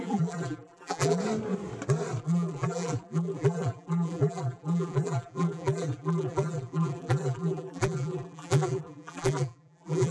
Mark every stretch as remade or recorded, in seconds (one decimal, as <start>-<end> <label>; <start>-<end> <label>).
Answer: 0.0-1.2 remade; 1.2-2.2 recorded; 2.2-10.1 remade